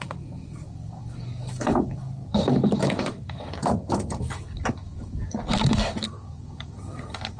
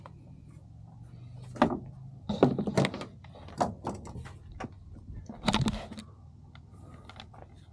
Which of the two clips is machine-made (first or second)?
first